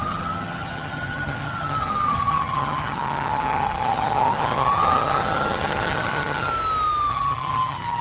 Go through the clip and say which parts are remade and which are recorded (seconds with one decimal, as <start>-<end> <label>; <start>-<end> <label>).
0.0-6.5 remade; 6.5-7.1 recorded; 7.1-8.0 remade